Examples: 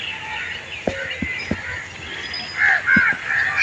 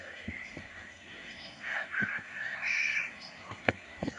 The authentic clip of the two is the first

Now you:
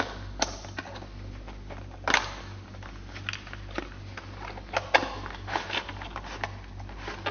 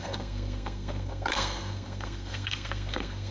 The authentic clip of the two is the first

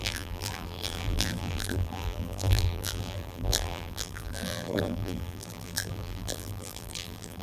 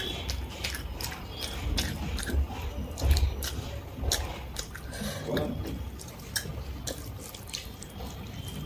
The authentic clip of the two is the second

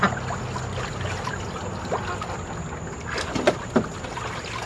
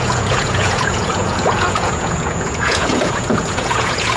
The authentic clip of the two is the first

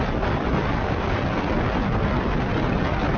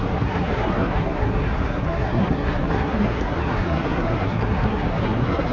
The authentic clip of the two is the first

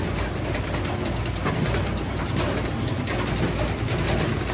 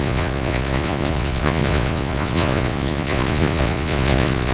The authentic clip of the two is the first